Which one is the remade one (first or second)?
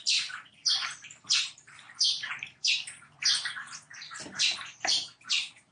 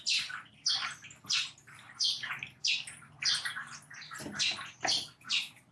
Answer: first